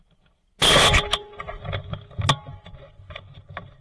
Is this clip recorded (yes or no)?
yes